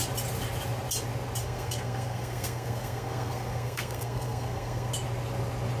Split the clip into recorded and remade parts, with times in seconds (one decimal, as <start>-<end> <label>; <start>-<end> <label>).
0.0-1.4 recorded; 1.4-4.9 remade; 4.9-5.8 recorded